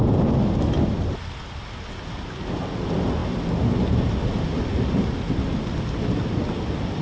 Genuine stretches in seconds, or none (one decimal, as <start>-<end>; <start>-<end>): 0.0-7.0